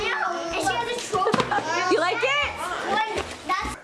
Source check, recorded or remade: recorded